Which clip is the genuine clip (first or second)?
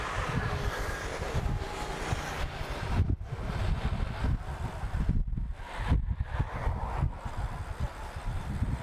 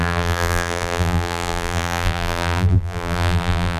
first